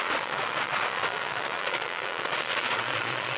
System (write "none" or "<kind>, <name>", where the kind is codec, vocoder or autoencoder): vocoder, Vocos